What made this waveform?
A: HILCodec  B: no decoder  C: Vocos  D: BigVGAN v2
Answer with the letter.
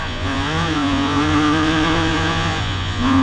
C